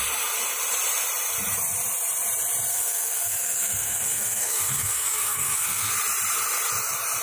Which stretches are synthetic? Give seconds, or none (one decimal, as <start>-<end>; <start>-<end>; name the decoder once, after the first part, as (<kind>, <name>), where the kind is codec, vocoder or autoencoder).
2.7-5.9 (codec, SNAC)